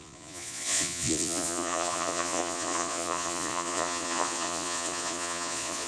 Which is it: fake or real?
fake